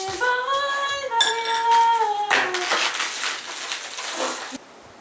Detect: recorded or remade recorded